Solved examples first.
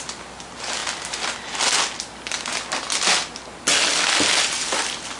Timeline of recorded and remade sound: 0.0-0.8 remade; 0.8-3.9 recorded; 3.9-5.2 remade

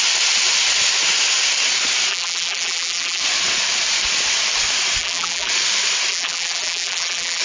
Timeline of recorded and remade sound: 0.0-2.1 recorded; 2.1-3.2 remade; 3.2-5.0 recorded; 5.0-5.5 remade; 5.5-6.1 recorded; 6.1-7.4 remade

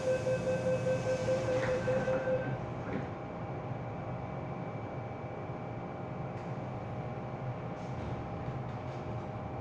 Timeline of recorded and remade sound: 0.0-1.2 recorded; 1.2-5.0 remade; 5.0-9.6 recorded

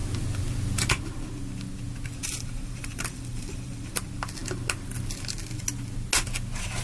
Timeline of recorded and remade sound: 0.0-2.2 recorded; 2.2-3.9 remade; 3.9-6.8 recorded

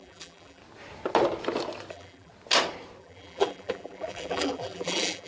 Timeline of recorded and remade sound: 0.0-0.6 remade; 0.6-1.9 recorded; 1.9-2.3 remade; 2.3-3.0 recorded; 3.0-5.3 remade